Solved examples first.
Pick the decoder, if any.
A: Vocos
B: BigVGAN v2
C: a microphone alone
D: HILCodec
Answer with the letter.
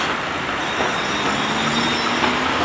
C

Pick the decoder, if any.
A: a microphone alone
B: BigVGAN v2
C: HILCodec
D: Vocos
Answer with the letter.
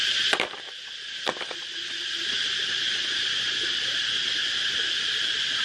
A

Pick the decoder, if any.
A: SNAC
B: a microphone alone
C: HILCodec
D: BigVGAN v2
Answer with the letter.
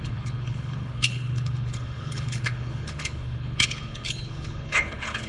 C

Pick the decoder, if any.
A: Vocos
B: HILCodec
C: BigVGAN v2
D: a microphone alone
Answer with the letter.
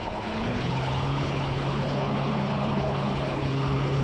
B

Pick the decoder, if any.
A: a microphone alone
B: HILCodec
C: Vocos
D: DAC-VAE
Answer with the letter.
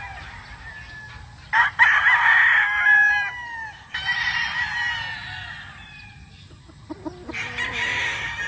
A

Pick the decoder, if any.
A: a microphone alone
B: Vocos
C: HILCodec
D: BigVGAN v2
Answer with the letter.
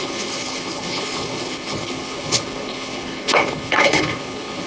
C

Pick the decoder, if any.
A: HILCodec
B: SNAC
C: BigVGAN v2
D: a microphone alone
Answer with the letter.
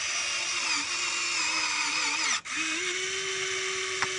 D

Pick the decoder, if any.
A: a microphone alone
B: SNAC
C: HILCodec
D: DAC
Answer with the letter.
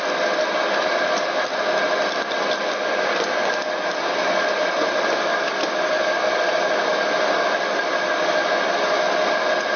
A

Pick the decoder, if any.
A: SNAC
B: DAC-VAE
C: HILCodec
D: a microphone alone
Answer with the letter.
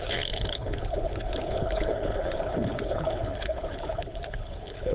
C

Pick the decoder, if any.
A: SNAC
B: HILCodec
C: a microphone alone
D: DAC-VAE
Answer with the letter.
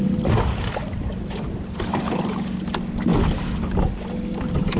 C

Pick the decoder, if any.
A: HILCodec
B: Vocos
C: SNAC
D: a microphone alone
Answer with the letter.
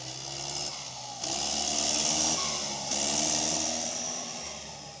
D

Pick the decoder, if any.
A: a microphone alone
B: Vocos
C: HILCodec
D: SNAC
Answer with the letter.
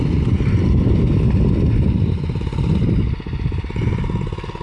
A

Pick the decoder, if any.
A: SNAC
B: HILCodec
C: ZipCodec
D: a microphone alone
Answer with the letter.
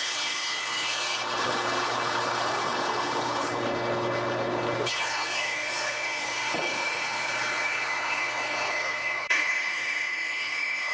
B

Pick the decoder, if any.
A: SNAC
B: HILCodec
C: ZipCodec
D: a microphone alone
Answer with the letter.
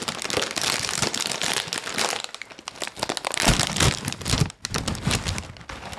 D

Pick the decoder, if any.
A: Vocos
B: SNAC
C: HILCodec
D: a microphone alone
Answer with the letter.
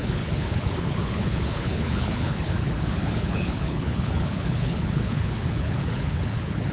C